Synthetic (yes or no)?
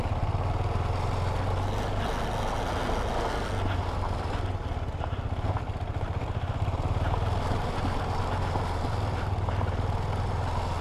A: no